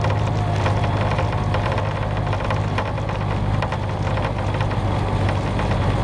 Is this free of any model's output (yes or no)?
yes